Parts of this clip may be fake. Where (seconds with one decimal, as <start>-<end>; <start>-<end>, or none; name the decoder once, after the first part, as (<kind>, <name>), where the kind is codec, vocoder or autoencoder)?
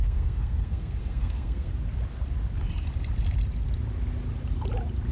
0.0-1.7 (codec, SNAC)